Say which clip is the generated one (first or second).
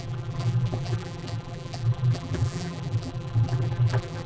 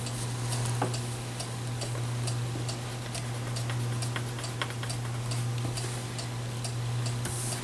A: first